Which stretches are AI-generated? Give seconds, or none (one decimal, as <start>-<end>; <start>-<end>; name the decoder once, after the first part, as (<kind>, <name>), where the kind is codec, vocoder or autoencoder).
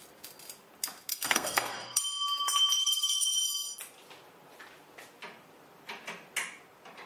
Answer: 1.1-2.0 (codec, SNAC); 2.8-3.3